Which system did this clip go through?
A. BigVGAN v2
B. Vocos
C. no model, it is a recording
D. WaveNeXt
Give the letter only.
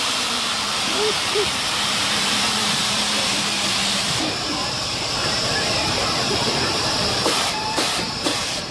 A